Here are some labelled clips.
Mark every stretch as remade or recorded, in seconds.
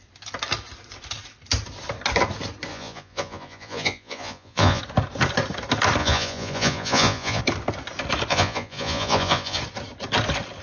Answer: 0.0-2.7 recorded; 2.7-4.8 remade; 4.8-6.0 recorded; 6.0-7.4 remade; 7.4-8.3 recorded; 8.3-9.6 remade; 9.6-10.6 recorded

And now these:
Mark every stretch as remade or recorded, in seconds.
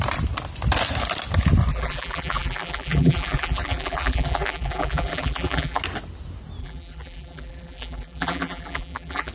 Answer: 0.0-1.7 recorded; 1.7-5.8 remade; 5.8-6.6 recorded; 6.6-9.3 remade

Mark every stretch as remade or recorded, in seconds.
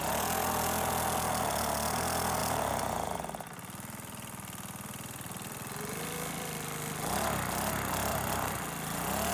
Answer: 0.0-2.4 recorded; 2.4-7.1 remade; 7.1-8.1 recorded; 8.1-8.6 remade; 8.6-9.3 recorded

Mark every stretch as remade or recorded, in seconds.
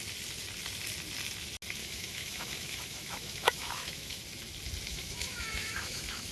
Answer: 0.0-1.8 recorded; 1.8-4.2 remade; 4.2-4.9 recorded; 4.9-6.3 remade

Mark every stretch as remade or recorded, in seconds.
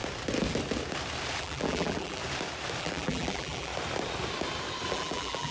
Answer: 0.0-1.4 recorded; 1.4-2.2 remade; 2.2-2.8 recorded; 2.8-3.7 remade; 3.7-4.9 recorded; 4.9-5.5 remade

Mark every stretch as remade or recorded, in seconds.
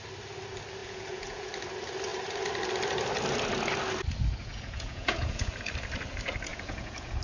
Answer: 0.0-0.8 recorded; 0.8-1.5 remade; 1.5-4.4 recorded; 4.4-5.5 remade; 5.5-6.5 recorded; 6.5-7.2 remade